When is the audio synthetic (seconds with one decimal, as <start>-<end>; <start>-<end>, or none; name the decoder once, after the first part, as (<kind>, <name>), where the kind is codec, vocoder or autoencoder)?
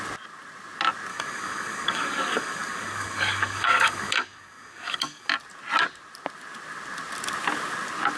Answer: 1.1-5.3 (codec, DAC)